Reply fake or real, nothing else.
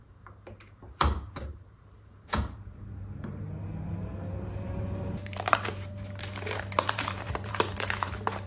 fake